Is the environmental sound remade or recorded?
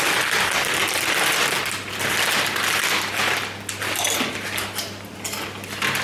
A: recorded